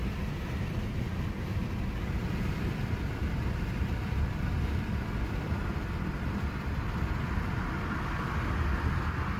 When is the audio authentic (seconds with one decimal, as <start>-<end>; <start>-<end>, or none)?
1.1-9.4